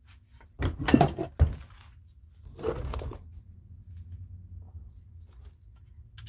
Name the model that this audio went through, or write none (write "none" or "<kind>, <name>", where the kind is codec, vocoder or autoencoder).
none